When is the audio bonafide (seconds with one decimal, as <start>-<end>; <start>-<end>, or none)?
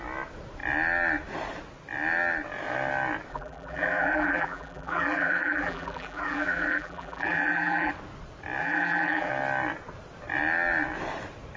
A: 0.0-3.3; 7.9-8.6; 9.3-11.6